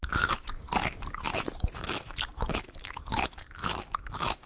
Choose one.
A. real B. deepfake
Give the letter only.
B